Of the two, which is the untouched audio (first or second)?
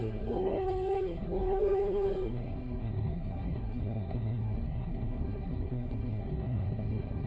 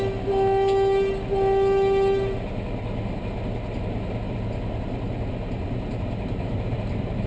second